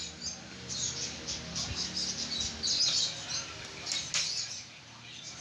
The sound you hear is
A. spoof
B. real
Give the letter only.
B